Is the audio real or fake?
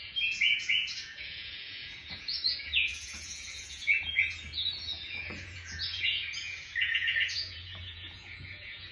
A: fake